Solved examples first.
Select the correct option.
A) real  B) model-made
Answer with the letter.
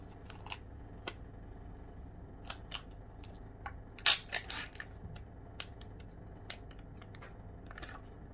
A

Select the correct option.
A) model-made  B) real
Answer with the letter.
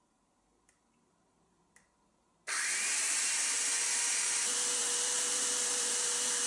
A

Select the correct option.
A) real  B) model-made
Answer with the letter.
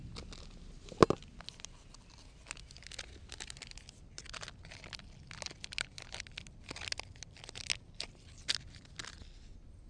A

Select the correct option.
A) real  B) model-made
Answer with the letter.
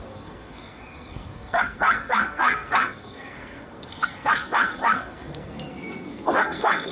B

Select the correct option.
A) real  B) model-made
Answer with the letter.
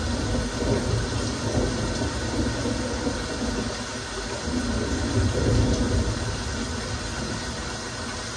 A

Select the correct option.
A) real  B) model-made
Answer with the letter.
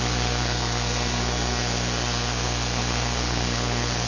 B